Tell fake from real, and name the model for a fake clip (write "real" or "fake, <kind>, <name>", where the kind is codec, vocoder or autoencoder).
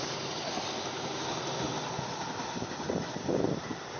real